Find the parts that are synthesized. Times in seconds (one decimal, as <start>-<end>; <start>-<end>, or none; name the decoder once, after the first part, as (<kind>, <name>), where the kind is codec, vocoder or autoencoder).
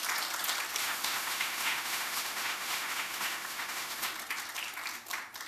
0.8-4.1 (autoencoder, DAC-VAE)